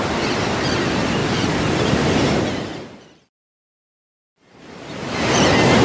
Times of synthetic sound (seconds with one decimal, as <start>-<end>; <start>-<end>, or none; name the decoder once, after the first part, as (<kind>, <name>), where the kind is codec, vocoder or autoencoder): none